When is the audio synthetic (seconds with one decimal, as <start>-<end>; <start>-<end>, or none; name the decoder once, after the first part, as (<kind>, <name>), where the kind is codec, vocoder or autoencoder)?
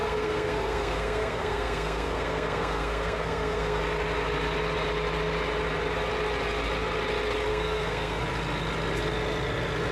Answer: 0.0-3.8 (codec, SNAC); 7.5-8.2